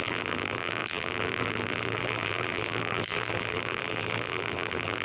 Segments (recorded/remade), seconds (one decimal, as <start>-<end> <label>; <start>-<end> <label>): 0.0-5.0 remade